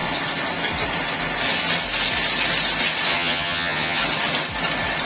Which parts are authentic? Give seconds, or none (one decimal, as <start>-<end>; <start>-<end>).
0.0-3.1; 4.0-5.1